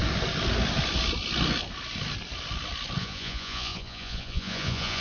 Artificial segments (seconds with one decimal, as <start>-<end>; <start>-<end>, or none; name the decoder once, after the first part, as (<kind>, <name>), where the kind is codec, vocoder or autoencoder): 3.0-5.0 (vocoder, Vocos)